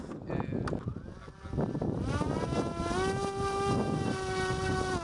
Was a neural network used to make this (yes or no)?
no